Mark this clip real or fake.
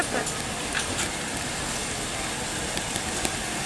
real